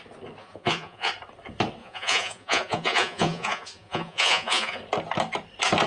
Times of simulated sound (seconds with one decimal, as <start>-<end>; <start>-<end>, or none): 0.4-1.1; 1.8-4.8